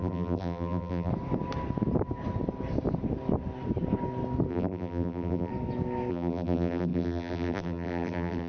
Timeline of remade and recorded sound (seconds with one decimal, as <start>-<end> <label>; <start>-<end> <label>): 0.0-1.1 remade; 1.1-4.5 recorded; 4.5-5.5 remade; 5.5-6.1 recorded; 6.1-8.5 remade